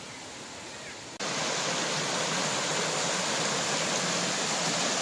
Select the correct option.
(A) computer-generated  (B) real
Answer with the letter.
B